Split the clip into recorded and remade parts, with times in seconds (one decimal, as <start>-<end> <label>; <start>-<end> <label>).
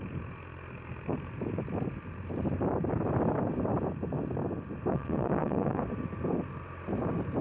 0.0-4.9 recorded; 4.9-5.8 remade; 5.8-7.4 recorded